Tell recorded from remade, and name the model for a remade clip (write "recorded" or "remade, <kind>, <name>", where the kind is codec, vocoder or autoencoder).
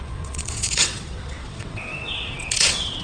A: remade, vocoder, WaveNeXt